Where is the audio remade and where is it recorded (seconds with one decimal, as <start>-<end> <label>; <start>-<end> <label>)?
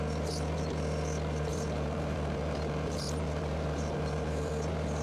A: 0.0-1.5 recorded; 1.5-4.5 remade; 4.5-5.0 recorded